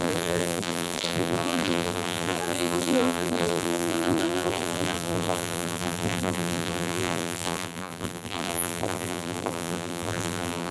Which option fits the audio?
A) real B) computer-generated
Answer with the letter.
B